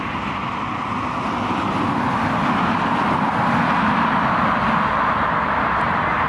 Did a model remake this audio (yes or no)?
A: no